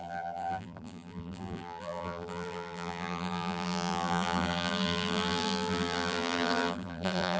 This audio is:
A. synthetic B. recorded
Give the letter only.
A